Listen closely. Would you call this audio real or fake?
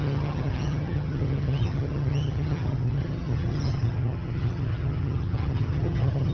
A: fake